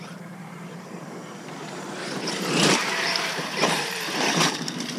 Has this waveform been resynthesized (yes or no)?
yes